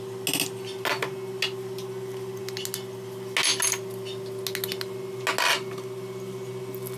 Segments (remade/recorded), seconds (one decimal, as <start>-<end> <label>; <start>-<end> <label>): 0.0-7.0 recorded